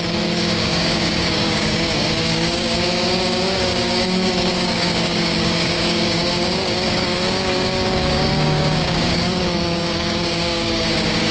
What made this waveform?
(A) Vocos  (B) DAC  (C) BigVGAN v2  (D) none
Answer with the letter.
B